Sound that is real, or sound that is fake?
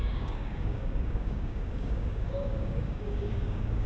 fake